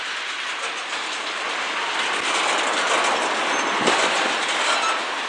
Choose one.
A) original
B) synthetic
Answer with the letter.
A